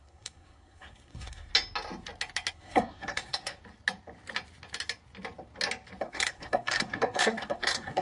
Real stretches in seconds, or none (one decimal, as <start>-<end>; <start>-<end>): 1.5-2.5; 3.6-6.0